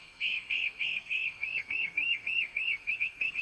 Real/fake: fake